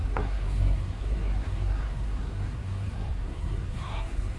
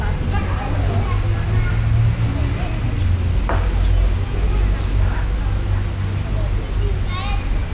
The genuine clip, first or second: second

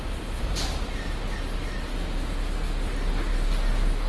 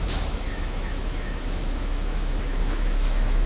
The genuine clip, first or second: first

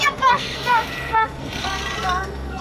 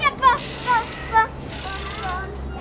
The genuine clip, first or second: second